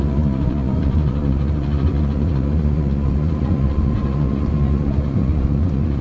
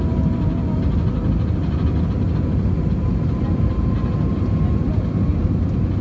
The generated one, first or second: first